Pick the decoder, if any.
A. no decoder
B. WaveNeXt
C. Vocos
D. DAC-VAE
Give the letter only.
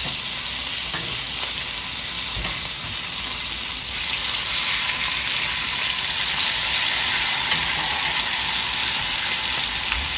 A